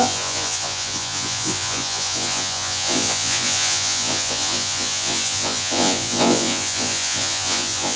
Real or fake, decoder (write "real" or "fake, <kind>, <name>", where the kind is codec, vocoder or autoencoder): fake, vocoder, Vocos